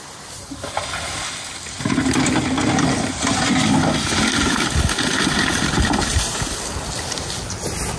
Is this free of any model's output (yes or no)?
yes